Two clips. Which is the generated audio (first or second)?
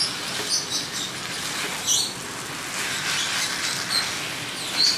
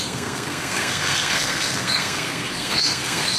second